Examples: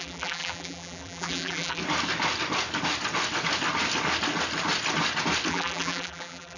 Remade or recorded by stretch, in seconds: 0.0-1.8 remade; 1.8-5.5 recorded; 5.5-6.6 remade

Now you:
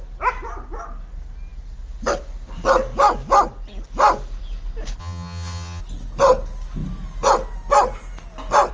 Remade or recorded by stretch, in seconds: 0.0-5.0 recorded; 5.0-5.8 remade; 5.8-8.7 recorded

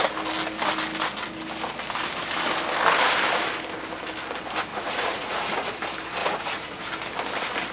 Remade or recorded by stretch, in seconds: 0.0-4.7 recorded; 4.7-5.7 remade; 5.7-6.2 recorded; 6.2-6.8 remade; 6.8-7.7 recorded

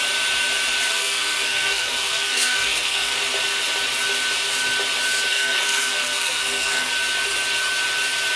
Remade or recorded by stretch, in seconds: 0.0-0.9 recorded; 0.9-3.2 remade; 3.2-5.3 recorded; 5.3-6.9 remade; 6.9-8.4 recorded

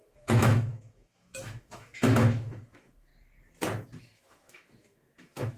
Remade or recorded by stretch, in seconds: 0.0-3.1 remade; 3.1-4.0 recorded; 4.0-5.6 remade